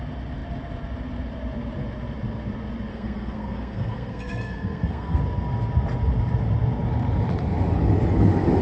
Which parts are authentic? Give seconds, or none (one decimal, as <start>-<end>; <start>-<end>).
0.0-2.9; 5.2-8.6